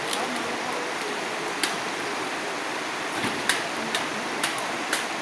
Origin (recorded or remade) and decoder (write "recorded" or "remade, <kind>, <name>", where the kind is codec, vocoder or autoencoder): remade, vocoder, BigVGAN v2